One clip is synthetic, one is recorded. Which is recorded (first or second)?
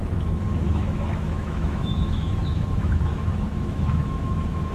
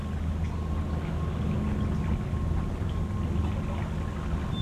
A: second